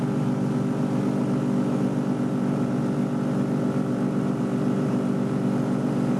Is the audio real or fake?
real